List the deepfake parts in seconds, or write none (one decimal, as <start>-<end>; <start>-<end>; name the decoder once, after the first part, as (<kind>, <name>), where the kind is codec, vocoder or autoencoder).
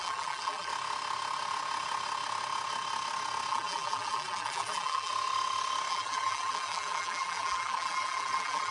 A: 0.0-0.7 (vocoder, BigVGAN v2); 3.5-5.1; 5.9-8.7